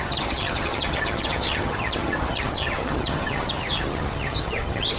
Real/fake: fake